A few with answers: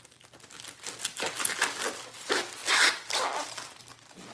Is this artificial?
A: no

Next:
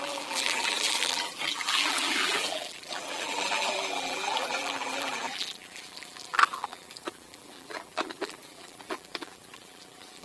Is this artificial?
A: yes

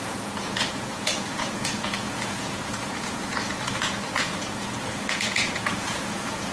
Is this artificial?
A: yes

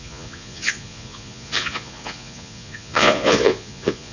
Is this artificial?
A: yes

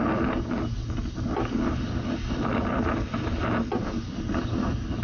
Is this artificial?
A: no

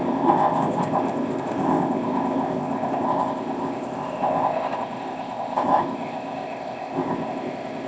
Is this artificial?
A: yes